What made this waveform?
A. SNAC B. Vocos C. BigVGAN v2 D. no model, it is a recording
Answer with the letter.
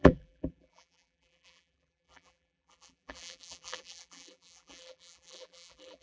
C